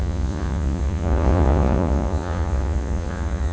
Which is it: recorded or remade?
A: remade